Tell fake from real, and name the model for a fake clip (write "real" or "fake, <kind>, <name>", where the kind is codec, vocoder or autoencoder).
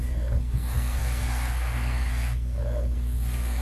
fake, codec, SNAC